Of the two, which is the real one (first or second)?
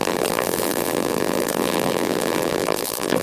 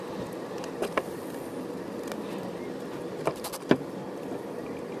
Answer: second